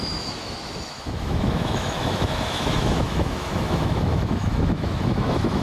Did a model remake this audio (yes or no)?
yes